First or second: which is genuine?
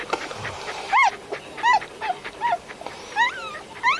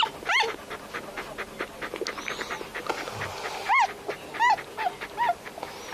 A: second